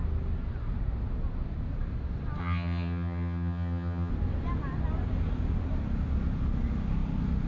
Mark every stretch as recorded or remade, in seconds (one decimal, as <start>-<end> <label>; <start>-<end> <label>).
0.0-2.4 recorded; 2.4-4.1 remade; 4.1-7.5 recorded